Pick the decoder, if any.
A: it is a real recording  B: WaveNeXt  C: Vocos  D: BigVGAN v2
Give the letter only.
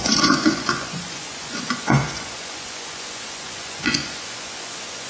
C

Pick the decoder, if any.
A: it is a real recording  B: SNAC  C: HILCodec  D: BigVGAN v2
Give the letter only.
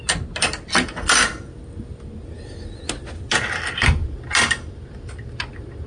A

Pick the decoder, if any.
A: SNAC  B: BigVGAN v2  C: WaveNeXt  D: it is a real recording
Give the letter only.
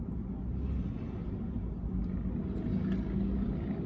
D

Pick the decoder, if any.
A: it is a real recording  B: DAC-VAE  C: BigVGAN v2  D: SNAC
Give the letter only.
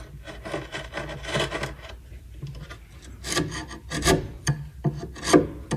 A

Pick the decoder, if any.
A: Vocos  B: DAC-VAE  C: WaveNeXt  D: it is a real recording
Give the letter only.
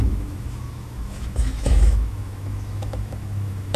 B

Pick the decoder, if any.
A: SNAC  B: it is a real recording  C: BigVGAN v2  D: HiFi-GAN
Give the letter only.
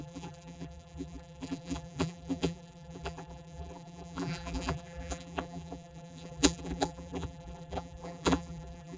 C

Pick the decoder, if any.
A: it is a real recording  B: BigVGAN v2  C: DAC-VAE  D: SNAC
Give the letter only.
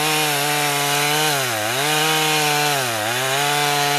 A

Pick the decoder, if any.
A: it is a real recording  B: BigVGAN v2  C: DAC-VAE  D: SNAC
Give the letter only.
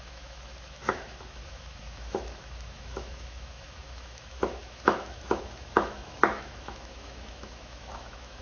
C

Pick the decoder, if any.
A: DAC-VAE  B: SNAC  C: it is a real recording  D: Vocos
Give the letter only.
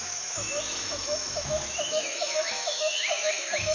A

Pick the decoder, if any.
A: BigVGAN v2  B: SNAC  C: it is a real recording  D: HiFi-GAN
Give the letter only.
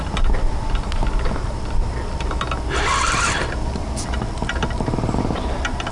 C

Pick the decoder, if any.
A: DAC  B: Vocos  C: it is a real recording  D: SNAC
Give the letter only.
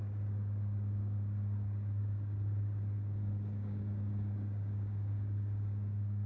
A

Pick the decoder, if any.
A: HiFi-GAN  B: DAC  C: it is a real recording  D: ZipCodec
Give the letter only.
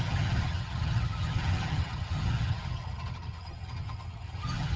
A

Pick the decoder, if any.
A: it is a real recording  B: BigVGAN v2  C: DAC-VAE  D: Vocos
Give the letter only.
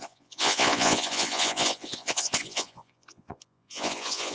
D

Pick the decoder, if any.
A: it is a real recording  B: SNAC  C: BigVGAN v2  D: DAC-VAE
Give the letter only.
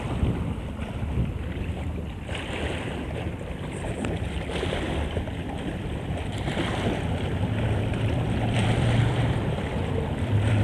C